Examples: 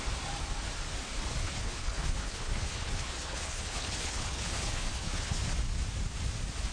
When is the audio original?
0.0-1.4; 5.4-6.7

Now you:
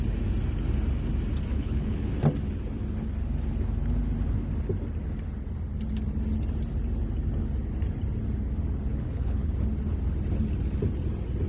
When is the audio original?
0.0-1.5; 2.1-8.9; 9.5-11.5

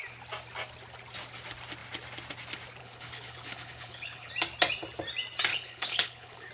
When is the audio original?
0.0-2.8; 4.3-5.5

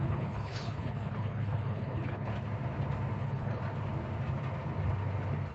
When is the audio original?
2.3-3.2; 3.6-5.5